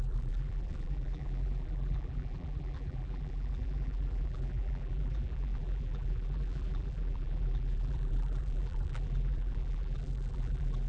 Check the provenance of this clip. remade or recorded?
remade